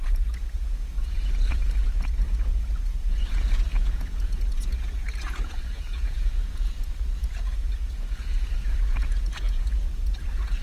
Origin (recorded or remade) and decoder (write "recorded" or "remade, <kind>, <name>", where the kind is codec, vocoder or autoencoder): remade, vocoder, Vocos